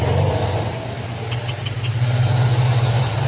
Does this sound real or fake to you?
real